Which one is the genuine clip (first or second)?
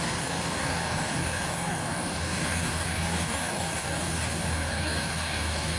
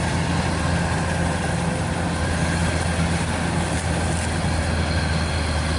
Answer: second